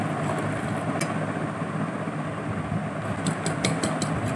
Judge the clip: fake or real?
real